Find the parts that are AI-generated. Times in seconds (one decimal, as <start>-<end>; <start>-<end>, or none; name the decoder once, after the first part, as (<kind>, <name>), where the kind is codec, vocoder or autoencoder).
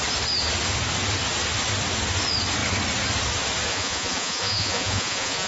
3.7-5.5 (vocoder, Vocos)